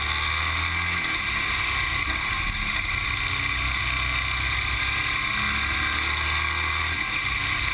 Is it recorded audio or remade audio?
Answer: recorded